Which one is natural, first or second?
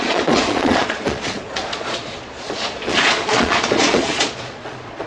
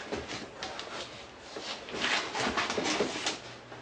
second